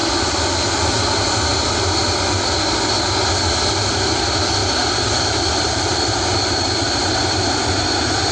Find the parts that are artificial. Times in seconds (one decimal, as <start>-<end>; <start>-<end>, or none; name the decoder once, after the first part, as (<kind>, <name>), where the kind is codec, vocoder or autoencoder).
4.6-7.6 (vocoder, BigVGAN v2)